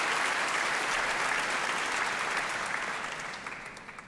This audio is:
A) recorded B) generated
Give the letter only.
A